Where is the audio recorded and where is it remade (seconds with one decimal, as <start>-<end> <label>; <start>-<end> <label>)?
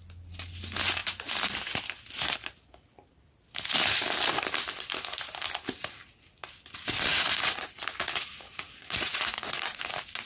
0.0-7.1 recorded; 7.1-9.8 remade; 9.8-10.3 recorded